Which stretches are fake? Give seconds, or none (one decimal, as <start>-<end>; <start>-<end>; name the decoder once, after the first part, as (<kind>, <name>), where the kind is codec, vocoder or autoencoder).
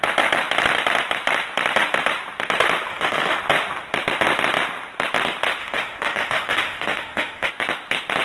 2.9-3.4 (autoencoder, DAC-VAE); 5.6-7.5